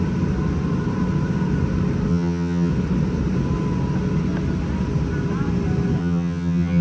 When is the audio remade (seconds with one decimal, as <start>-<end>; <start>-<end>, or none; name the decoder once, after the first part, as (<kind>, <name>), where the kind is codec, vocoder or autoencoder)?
2.1-2.7 (vocoder, HiFi-GAN); 6.0-6.8